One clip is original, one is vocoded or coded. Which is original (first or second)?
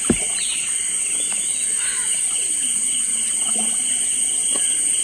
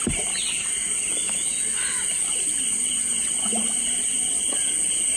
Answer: second